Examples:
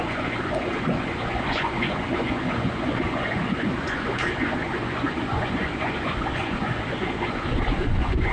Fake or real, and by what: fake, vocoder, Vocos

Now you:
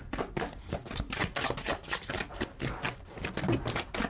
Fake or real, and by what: real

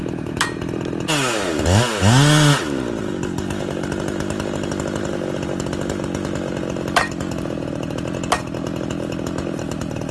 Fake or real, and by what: real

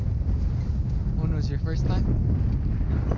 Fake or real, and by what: real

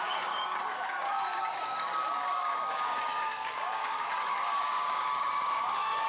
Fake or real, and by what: fake, codec, DAC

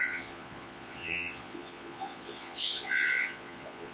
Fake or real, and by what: fake, vocoder, Vocos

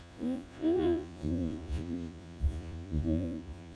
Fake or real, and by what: fake, vocoder, Vocos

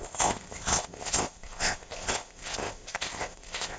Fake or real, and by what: fake, codec, ZipCodec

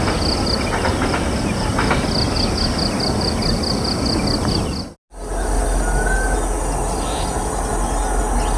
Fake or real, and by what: real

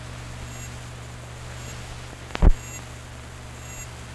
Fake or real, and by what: real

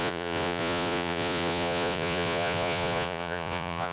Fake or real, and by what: fake, vocoder, Vocos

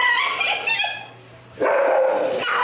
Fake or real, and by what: real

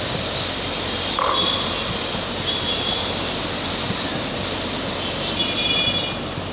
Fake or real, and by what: real